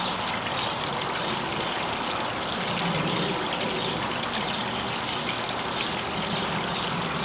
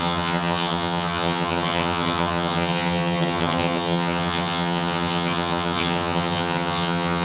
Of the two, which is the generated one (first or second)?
second